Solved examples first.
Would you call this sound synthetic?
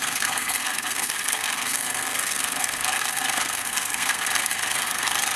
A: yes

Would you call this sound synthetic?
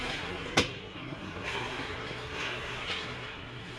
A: yes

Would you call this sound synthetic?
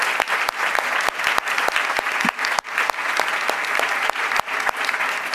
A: no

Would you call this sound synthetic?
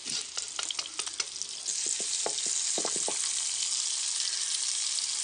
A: no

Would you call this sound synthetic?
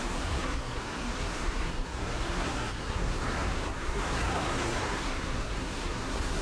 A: yes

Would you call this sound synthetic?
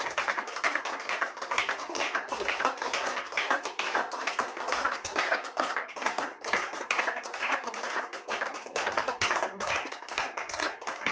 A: yes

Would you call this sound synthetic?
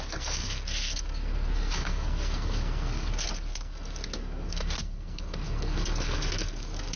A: yes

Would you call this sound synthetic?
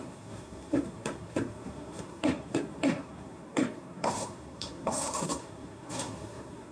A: yes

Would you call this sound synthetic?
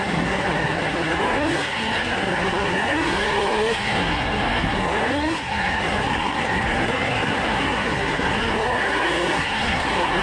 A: yes